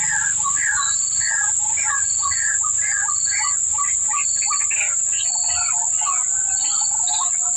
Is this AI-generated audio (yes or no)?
no